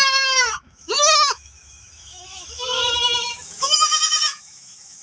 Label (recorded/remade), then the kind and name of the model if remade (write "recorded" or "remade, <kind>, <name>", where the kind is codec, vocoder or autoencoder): remade, autoencoder, DAC-VAE